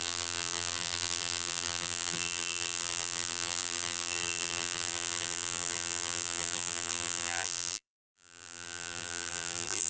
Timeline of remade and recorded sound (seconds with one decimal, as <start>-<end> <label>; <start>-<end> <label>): 0.0-9.9 remade